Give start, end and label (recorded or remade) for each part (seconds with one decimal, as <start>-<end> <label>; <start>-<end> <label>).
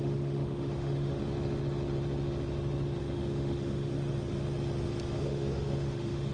0.0-1.2 remade; 1.2-3.0 recorded; 3.0-3.9 remade; 3.9-5.2 recorded; 5.2-6.3 remade